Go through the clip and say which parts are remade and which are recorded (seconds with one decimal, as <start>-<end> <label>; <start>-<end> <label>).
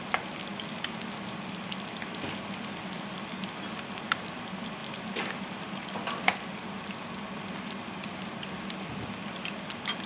0.0-10.1 recorded